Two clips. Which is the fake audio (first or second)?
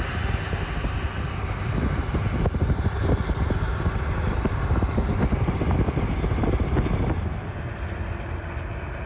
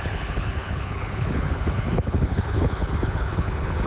second